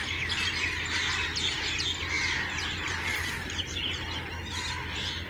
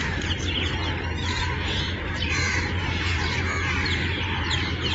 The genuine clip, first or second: first